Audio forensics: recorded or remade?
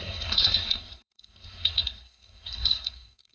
remade